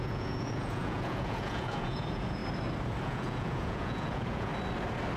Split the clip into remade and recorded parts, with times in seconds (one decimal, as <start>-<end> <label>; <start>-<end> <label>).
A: 0.0-2.4 remade; 2.4-3.0 recorded; 3.0-4.5 remade; 4.5-5.2 recorded

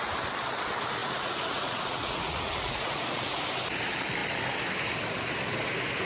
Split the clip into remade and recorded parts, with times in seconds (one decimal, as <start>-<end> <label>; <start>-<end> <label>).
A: 0.0-1.0 recorded; 1.0-3.4 remade; 3.4-6.1 recorded

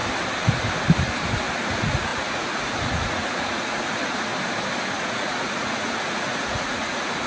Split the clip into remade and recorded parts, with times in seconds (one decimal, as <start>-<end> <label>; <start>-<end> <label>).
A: 0.0-1.5 recorded; 1.5-4.3 remade; 4.3-4.9 recorded; 4.9-7.3 remade

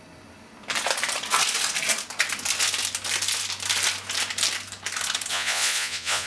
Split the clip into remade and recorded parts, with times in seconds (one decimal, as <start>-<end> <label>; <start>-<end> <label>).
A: 0.0-5.3 recorded; 5.3-6.3 remade

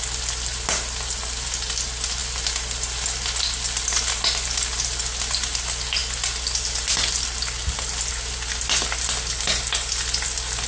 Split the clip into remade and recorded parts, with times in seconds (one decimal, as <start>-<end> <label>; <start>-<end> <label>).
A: 0.0-10.7 recorded

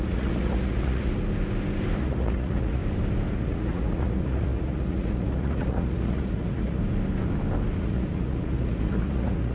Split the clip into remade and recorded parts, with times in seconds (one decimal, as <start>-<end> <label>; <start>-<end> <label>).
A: 0.0-1.1 remade; 1.1-2.0 recorded; 2.0-2.8 remade; 2.8-3.3 recorded; 3.3-6.8 remade; 6.8-7.8 recorded; 7.8-9.5 remade

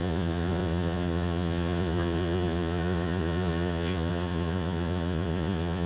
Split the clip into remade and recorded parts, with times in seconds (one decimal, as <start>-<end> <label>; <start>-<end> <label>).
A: 0.0-5.9 remade

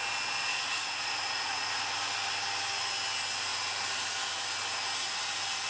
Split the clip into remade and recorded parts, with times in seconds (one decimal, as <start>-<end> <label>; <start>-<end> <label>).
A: 0.0-0.5 recorded; 0.5-1.8 remade; 1.8-5.7 recorded